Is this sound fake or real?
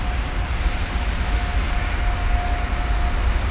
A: real